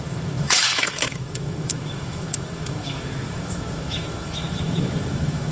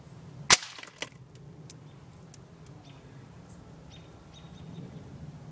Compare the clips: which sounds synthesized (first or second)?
first